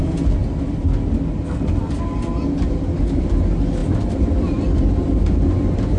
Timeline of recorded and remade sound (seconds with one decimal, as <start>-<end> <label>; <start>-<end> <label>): 0.0-6.0 recorded